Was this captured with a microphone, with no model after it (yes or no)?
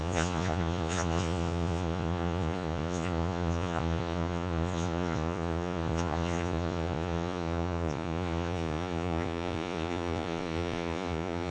no